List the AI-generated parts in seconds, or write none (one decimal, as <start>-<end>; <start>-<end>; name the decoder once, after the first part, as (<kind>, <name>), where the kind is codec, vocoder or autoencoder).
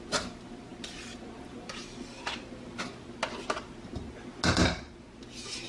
none